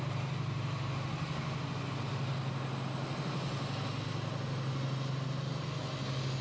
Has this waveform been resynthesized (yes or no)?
no